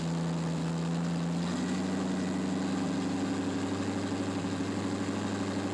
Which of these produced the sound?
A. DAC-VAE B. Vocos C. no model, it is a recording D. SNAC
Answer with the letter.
C